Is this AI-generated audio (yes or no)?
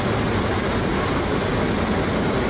no